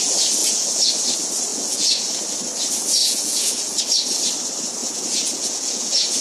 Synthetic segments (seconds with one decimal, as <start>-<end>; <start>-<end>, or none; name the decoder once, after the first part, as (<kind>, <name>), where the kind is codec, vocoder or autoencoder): 0.4-0.9 (vocoder, Vocos); 1.5-2.2; 3.0-3.8; 4.8-6.2